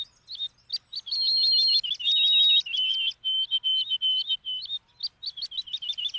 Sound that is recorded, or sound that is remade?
recorded